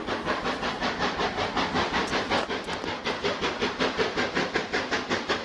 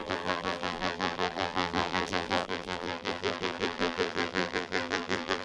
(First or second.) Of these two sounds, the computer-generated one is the second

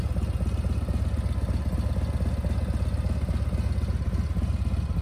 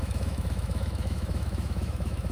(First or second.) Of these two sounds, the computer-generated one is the second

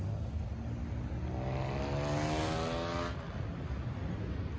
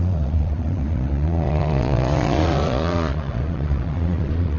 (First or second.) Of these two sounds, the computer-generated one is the second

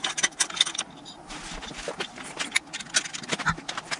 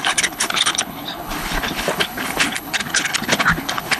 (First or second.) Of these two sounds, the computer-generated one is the second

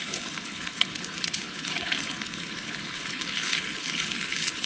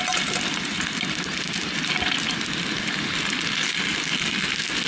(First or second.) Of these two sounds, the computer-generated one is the first